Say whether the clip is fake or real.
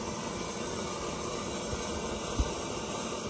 real